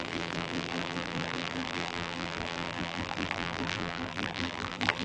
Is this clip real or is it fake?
fake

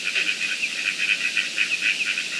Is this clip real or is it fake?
real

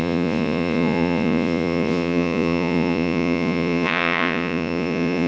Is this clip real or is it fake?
fake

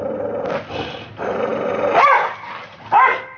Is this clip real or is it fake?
fake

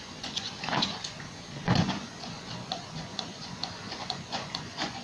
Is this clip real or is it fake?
fake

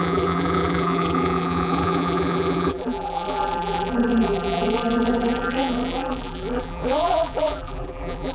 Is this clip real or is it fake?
fake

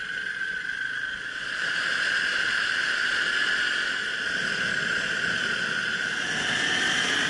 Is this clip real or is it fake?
real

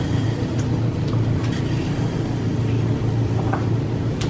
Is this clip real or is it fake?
real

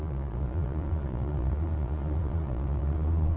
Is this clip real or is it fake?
fake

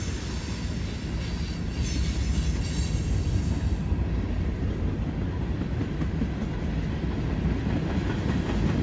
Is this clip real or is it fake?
real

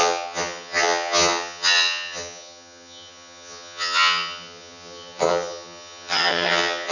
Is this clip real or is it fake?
fake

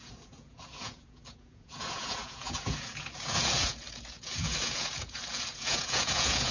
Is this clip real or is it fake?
fake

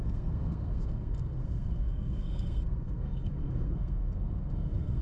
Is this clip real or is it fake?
fake